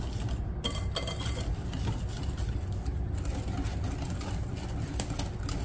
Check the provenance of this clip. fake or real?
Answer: real